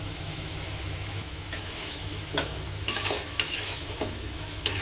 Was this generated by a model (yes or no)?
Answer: yes